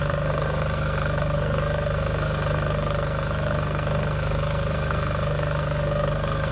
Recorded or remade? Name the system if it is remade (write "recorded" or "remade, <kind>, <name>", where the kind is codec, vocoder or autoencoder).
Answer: remade, codec, SNAC